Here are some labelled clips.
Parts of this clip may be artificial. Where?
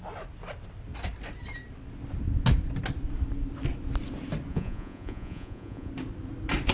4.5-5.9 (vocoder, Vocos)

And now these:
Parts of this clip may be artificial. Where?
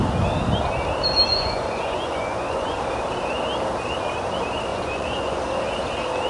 1.3-2.8 (vocoder, Vocos); 4.7-5.4